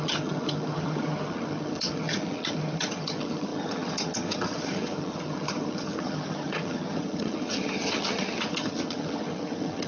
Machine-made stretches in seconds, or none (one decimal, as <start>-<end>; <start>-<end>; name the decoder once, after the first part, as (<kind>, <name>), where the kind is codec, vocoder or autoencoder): 0.0-9.9 (vocoder, HiFi-GAN)